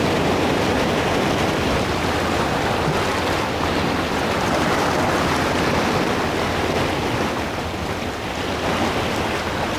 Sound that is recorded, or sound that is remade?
recorded